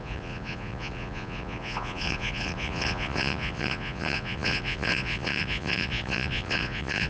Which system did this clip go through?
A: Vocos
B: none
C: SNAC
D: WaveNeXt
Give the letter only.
A